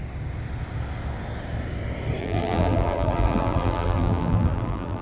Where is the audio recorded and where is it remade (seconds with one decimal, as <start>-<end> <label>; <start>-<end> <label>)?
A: 0.0-2.2 recorded; 2.2-5.0 remade